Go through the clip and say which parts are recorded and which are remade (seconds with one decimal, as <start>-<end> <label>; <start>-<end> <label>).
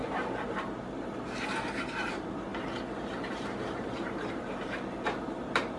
0.0-2.5 remade; 2.5-3.3 recorded; 3.3-5.8 remade